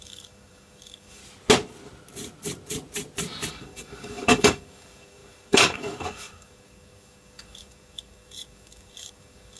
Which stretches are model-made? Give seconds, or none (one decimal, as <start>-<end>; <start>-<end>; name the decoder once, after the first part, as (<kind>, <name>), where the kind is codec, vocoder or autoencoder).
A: 0.0-1.2 (codec, DAC); 3.5-9.6